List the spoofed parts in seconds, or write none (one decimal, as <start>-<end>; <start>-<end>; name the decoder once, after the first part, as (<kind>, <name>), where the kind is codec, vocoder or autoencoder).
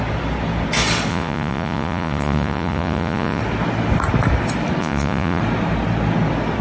1.1-3.4 (vocoder, Vocos); 4.8-5.4